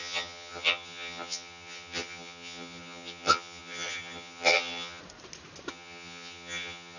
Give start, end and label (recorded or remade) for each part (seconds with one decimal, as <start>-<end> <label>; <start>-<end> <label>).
0.0-5.0 remade; 5.0-5.7 recorded; 5.7-7.0 remade